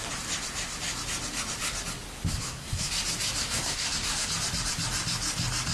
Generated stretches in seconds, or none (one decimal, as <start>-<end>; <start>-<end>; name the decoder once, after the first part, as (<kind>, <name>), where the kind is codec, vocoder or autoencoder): 2.3-2.9 (codec, SNAC); 3.4-4.3